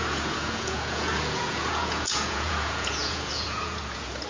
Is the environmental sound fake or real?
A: fake